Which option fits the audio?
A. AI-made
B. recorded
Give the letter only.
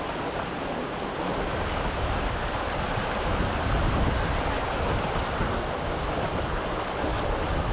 B